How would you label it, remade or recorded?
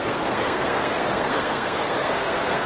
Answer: remade